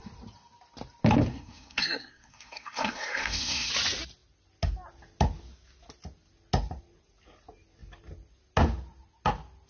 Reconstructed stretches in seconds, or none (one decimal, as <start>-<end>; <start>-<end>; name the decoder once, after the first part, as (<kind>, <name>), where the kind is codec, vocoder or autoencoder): 1.3-3.7 (codec, SNAC)